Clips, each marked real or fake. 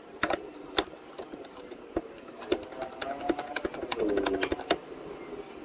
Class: real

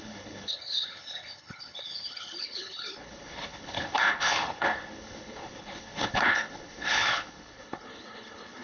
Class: fake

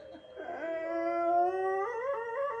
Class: real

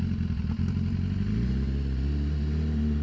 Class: real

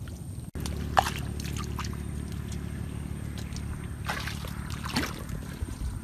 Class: real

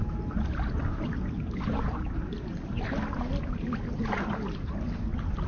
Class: real